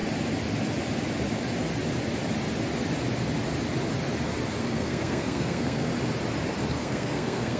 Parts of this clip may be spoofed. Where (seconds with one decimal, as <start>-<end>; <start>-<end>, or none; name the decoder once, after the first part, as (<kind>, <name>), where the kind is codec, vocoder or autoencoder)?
4.6-5.9 (codec, SNAC); 6.7-7.6